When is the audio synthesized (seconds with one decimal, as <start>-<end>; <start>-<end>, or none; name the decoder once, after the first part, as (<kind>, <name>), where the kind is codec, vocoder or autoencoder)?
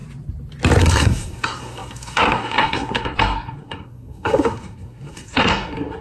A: 0.8-6.0 (codec, SNAC)